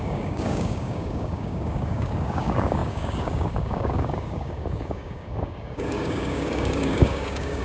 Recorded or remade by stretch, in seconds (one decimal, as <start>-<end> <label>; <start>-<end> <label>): 0.0-7.6 remade